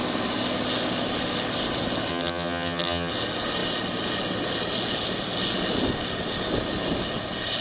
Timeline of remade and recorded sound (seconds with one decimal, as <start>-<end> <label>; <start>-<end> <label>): 0.0-2.1 recorded; 2.1-3.1 remade; 3.1-7.6 recorded